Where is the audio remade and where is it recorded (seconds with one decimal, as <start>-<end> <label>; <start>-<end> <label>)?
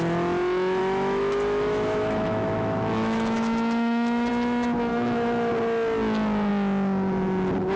0.0-0.8 recorded; 0.8-4.3 remade; 4.3-4.9 recorded; 4.9-5.5 remade; 5.5-7.8 recorded